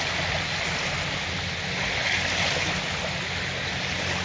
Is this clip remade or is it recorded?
recorded